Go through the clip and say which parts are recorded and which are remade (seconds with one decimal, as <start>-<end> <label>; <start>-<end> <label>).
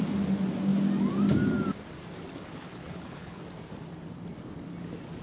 0.0-2.7 recorded; 2.7-3.4 remade; 3.4-5.2 recorded